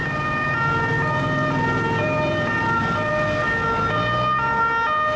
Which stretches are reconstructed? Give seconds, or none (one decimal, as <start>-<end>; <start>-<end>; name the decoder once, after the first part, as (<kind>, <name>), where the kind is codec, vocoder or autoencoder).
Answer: 0.0-3.1 (vocoder, BigVGAN v2)

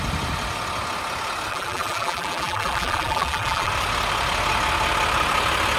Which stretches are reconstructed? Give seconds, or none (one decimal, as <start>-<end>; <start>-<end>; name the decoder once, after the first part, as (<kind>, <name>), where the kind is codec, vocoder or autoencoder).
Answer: 1.5-3.7 (vocoder, BigVGAN v2)

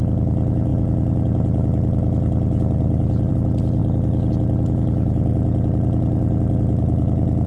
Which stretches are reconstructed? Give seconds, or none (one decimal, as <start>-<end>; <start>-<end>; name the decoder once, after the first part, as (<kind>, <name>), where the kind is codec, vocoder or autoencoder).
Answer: none

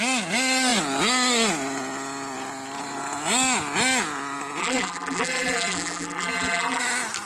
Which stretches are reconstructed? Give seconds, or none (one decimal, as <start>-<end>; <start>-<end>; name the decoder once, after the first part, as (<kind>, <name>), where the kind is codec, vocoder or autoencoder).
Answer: 4.6-6.8 (vocoder, BigVGAN v2)

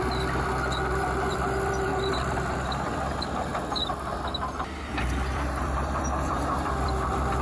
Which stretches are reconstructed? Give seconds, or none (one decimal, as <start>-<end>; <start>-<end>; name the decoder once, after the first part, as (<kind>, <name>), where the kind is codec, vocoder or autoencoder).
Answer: 0.0-3.5 (vocoder, BigVGAN v2); 4.9-7.4